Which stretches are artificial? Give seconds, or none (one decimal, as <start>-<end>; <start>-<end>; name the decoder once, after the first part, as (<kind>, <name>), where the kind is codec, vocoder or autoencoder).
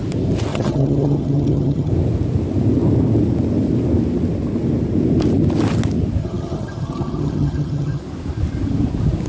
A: 0.5-1.9 (vocoder, HiFi-GAN); 6.2-8.0